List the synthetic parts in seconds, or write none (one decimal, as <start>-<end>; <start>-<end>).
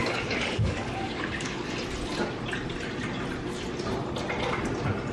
0.0-1.7